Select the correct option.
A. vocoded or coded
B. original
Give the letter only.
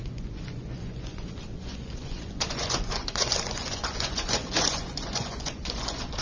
A